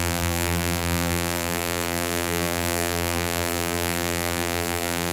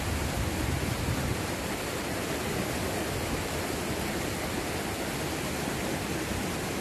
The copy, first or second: first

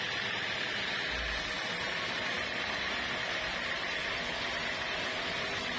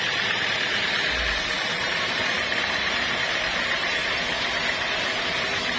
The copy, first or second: second